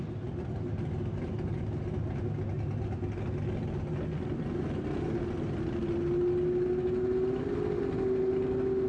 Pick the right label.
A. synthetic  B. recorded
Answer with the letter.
B